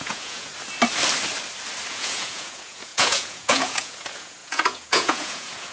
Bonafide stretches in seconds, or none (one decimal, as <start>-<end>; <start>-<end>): 0.5-1.9